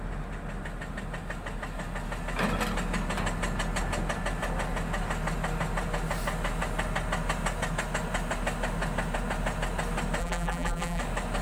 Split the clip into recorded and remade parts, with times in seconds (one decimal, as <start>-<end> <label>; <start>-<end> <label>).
0.0-10.2 recorded; 10.2-11.0 remade; 11.0-11.4 recorded